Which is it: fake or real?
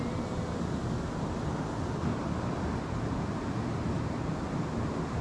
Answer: real